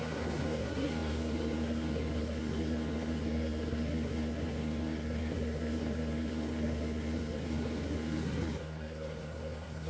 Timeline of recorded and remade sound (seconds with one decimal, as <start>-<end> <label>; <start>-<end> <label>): 0.0-9.9 remade